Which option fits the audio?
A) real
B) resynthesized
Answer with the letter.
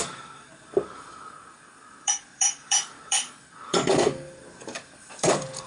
B